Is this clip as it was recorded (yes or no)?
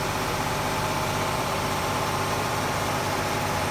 no